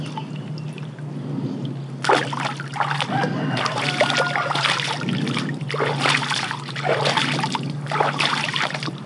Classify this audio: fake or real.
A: real